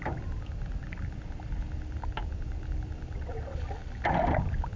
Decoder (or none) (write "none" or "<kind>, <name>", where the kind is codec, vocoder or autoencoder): none